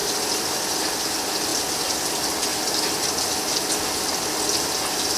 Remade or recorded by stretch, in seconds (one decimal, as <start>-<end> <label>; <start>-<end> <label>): 0.0-5.2 recorded